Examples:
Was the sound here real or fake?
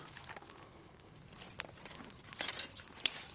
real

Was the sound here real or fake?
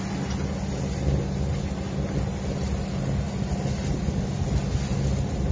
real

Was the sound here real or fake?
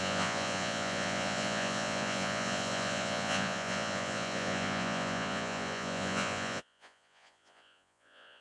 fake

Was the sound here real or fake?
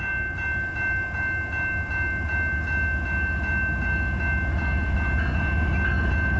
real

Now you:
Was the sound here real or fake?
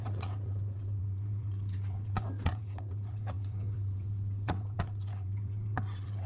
fake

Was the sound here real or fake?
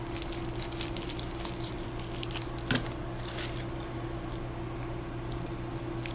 real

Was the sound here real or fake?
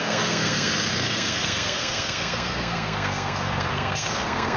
fake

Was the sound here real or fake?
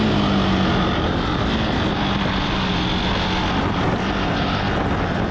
real